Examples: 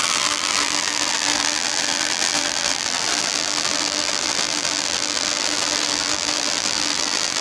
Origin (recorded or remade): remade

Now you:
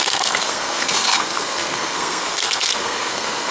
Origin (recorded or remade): remade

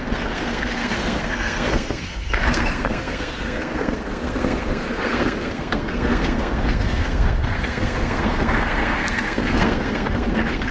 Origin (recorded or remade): remade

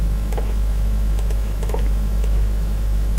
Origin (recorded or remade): remade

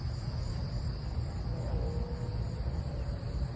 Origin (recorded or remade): recorded